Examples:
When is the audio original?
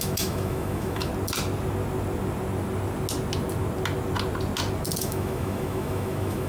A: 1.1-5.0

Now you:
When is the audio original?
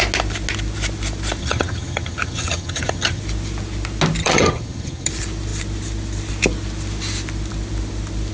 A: 0.0-1.4; 3.2-4.2; 5.1-8.3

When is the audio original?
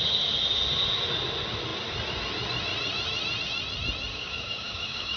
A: 0.0-4.1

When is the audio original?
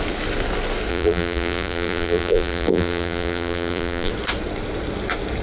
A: 0.0-0.9; 4.1-5.4